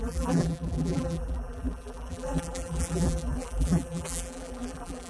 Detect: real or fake fake